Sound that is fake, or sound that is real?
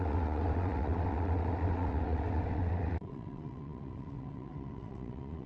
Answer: fake